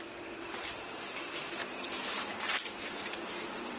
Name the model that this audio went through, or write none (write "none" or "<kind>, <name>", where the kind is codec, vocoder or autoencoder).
vocoder, BigVGAN v2